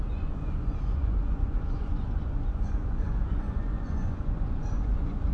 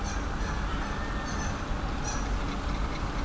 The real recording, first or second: second